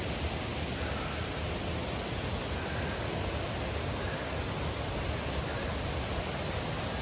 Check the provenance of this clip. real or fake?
real